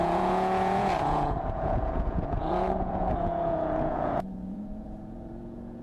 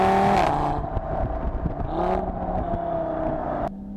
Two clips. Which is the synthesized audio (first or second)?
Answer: first